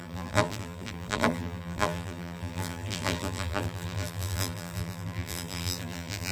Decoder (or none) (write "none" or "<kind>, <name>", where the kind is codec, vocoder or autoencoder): vocoder, BigVGAN v2